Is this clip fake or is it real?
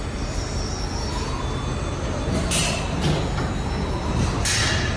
real